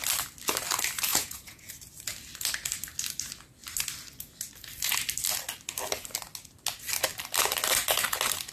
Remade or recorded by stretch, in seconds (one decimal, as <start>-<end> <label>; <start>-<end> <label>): 0.0-1.1 recorded; 1.1-1.7 remade; 1.7-8.5 recorded